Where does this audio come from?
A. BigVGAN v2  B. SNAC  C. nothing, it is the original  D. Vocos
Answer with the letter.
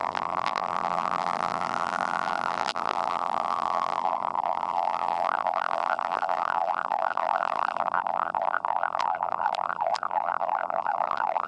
A